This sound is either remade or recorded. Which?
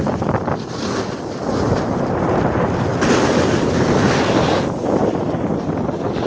recorded